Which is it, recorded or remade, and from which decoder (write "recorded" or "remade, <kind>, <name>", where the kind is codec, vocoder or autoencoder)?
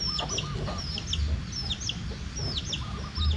recorded